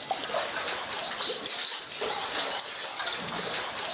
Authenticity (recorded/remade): recorded